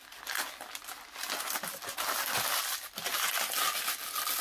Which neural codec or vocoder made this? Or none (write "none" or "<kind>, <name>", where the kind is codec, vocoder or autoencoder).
none